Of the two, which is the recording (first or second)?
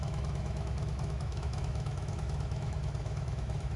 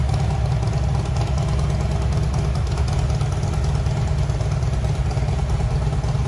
second